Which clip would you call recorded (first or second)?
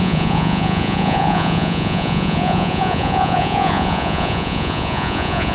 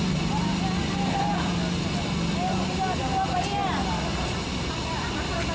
second